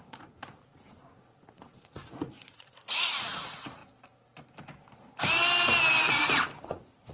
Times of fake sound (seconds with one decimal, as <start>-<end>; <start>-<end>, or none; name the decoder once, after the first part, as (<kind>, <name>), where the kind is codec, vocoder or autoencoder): 0.0-3.8 (vocoder, Vocos); 6.1-7.1